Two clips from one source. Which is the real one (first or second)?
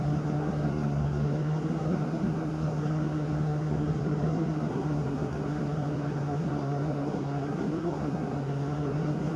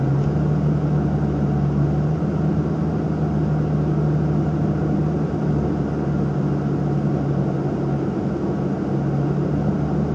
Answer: second